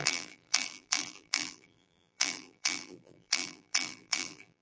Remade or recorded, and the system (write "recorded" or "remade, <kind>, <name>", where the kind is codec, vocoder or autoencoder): remade, vocoder, BigVGAN v2